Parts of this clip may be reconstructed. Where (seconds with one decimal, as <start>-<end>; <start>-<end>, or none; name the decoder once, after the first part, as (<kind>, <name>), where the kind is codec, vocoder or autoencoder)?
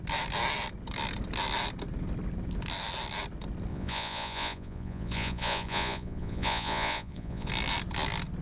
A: 3.7-7.5 (vocoder, Vocos)